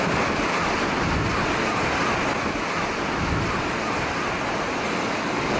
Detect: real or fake real